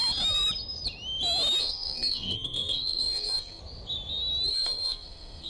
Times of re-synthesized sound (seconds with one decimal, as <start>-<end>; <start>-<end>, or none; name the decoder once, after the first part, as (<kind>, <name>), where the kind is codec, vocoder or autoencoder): 1.6-3.6 (codec, SNAC); 4.5-5.5